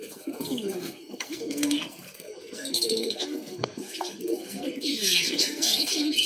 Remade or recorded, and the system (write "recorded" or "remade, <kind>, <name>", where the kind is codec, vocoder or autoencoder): remade, codec, SNAC